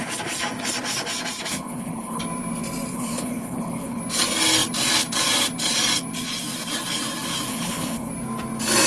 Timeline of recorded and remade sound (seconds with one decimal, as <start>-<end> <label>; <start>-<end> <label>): 0.0-1.5 recorded; 1.5-2.2 remade; 2.2-2.9 recorded; 2.9-4.0 remade; 4.0-7.5 recorded; 7.5-8.1 remade; 8.1-8.9 recorded